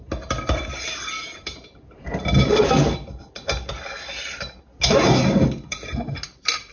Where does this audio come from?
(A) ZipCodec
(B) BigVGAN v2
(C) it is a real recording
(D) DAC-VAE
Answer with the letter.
C